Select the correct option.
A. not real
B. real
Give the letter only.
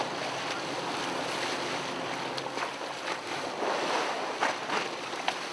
B